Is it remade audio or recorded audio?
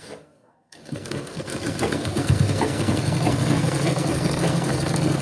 remade